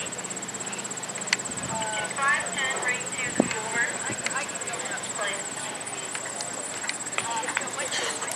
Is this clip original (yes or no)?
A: yes